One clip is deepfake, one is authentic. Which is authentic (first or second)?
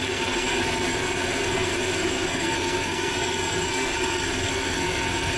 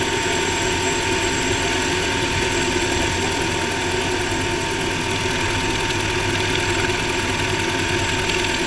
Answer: second